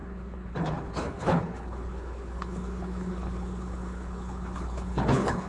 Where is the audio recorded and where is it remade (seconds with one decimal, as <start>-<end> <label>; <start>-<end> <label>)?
0.0-5.5 remade